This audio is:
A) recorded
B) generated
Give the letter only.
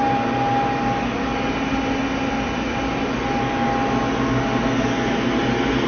A